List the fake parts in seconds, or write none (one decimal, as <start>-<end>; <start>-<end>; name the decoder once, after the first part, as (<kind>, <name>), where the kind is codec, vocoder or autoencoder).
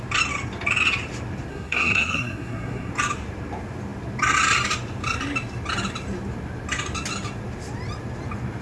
1.5-2.9 (codec, SNAC)